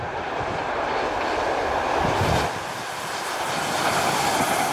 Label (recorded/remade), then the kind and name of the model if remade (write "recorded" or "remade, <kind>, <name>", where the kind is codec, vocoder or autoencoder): recorded